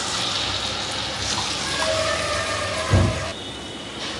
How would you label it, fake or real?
real